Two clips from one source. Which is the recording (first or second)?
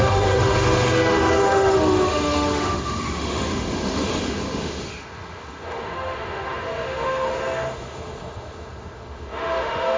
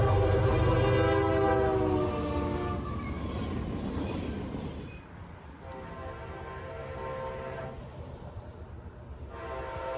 second